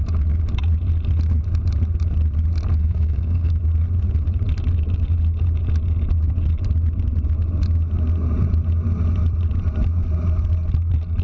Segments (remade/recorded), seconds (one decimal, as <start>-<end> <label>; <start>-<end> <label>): 0.0-2.8 recorded; 2.8-3.5 remade; 3.5-11.2 recorded